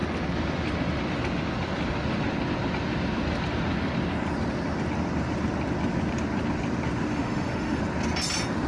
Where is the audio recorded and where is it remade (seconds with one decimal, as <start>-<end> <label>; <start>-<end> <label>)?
0.0-7.1 recorded; 7.1-7.8 remade; 7.8-8.7 recorded